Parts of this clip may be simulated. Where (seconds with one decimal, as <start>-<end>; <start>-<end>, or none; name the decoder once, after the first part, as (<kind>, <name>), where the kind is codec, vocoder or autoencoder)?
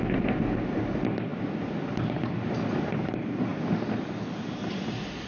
none